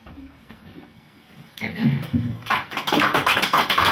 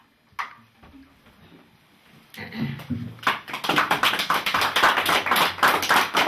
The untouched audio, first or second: second